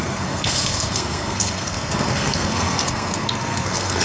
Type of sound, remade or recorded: remade